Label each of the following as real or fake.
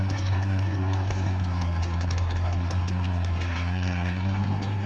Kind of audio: fake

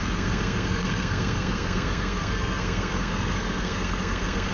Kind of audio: fake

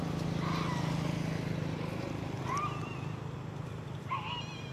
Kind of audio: real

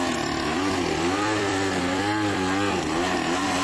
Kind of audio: fake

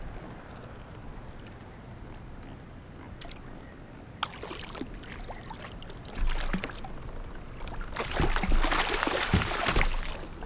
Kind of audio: real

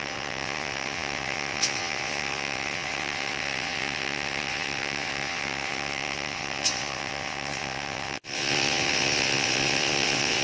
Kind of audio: fake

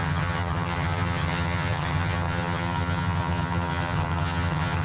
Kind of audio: fake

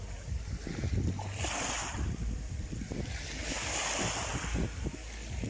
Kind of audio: real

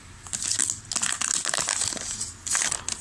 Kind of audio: real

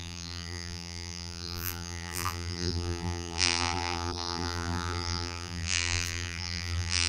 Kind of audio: fake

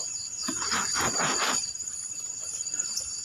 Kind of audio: fake